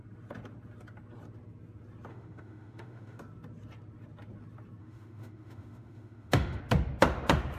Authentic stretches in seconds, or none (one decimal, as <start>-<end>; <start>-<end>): 0.0-2.1; 3.2-4.8; 6.6-7.6